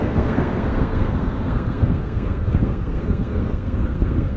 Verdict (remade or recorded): remade